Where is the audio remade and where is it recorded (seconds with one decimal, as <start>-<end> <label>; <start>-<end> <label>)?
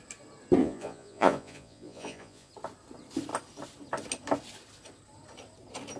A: 0.0-0.6 recorded; 0.6-2.5 remade; 2.5-6.0 recorded